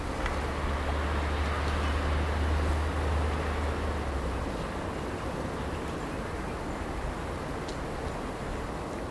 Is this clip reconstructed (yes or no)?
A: no